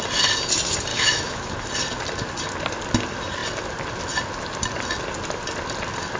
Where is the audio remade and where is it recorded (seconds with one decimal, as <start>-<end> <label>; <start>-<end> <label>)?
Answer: 0.0-0.9 recorded; 0.9-1.5 remade; 1.5-6.2 recorded